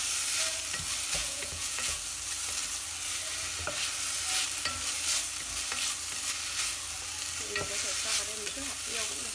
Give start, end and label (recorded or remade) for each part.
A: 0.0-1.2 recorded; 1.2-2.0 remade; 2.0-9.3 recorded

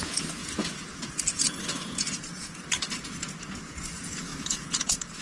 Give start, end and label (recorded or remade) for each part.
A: 0.0-5.2 remade

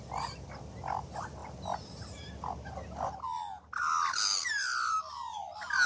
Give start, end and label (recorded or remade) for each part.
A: 0.0-5.9 recorded

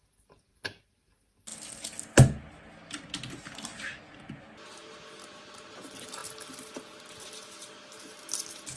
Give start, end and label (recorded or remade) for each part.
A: 0.0-8.8 recorded

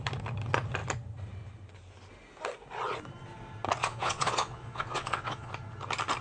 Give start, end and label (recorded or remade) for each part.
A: 0.0-3.8 recorded; 3.8-5.5 remade; 5.5-6.2 recorded

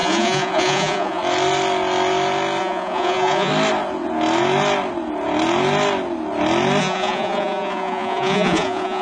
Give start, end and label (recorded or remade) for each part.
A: 0.0-1.2 remade; 1.2-2.6 recorded; 2.6-3.5 remade; 3.5-6.8 recorded; 6.8-9.0 remade